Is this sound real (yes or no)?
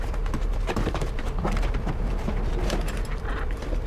no